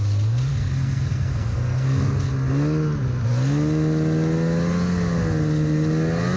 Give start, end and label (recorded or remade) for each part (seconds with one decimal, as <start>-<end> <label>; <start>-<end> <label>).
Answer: 0.0-0.5 recorded; 0.5-2.3 remade; 2.3-6.4 recorded